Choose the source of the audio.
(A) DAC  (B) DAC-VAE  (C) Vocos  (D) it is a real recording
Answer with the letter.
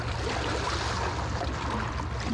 D